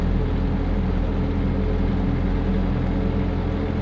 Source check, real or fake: real